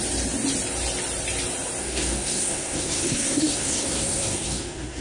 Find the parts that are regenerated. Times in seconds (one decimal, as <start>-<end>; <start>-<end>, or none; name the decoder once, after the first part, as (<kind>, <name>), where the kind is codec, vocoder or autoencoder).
1.8-5.0 (codec, SNAC)